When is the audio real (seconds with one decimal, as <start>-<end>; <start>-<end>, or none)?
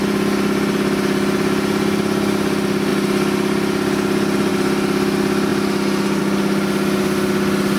0.0-7.8